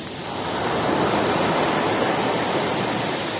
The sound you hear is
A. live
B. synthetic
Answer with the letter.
A